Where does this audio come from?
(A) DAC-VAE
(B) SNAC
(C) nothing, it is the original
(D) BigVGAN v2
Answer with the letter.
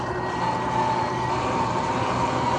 C